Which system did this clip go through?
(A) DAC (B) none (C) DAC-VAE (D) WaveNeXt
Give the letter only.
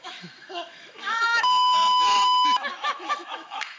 C